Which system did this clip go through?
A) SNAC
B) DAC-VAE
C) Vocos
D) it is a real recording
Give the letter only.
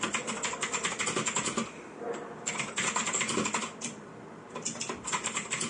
D